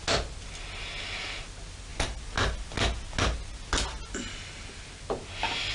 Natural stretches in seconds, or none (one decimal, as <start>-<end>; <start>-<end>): 0.0-5.7